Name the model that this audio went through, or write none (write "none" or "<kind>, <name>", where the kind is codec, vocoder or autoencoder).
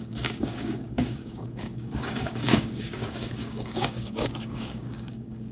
codec, DAC